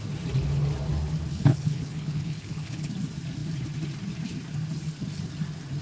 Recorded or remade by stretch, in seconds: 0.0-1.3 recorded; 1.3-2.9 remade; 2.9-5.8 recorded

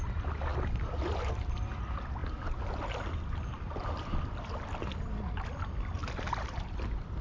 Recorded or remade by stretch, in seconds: 0.0-0.5 recorded; 0.5-1.3 remade; 1.3-6.0 recorded; 6.0-6.5 remade; 6.5-7.2 recorded

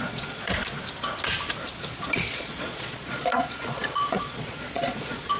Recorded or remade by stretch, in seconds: 0.0-0.5 remade; 0.5-1.8 recorded; 1.8-5.4 remade

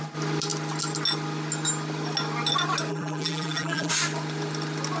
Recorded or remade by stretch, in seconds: 0.0-2.9 recorded; 2.9-3.9 remade; 3.9-5.0 recorded

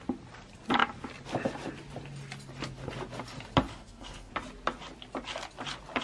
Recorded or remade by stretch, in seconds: 0.0-3.7 recorded; 3.7-4.3 remade; 4.3-6.0 recorded

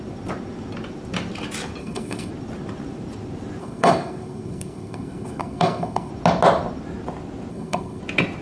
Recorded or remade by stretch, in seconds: 0.0-1.8 recorded; 1.8-2.3 remade; 2.3-3.6 recorded; 3.6-6.1 remade; 6.1-7.5 recorded; 7.5-8.0 remade; 8.0-8.4 recorded

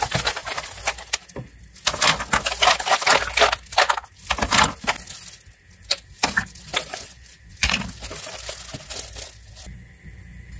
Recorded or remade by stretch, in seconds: 0.0-6.9 recorded; 6.9-7.7 remade; 7.7-10.6 recorded